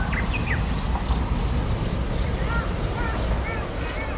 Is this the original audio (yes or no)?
yes